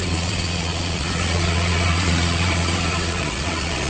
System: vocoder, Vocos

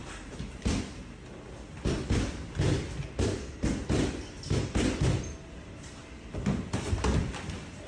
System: none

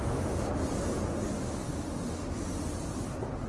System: none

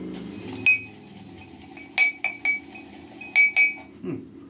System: none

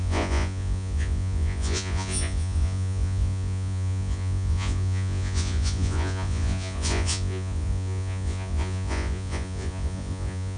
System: vocoder, Vocos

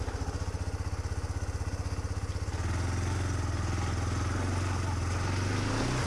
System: none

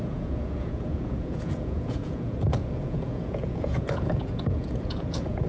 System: vocoder, Vocos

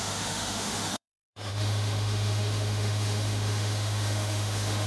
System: autoencoder, DAC-VAE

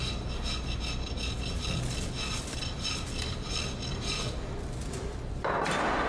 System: none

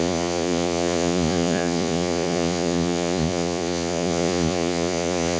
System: vocoder, Vocos